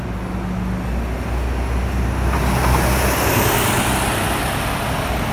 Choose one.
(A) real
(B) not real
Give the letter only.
A